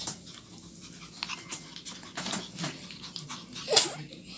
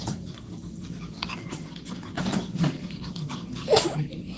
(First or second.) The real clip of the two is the first